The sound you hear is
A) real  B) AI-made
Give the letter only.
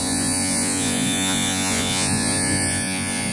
B